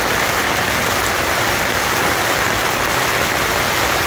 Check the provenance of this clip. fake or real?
real